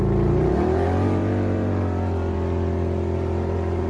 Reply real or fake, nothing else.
fake